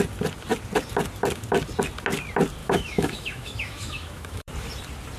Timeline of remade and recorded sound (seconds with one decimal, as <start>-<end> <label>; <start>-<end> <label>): 0.0-2.6 recorded; 2.6-4.5 remade; 4.5-5.2 recorded